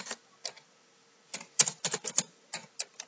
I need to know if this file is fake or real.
real